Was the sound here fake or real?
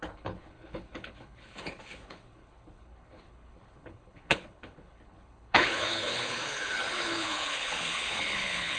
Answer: fake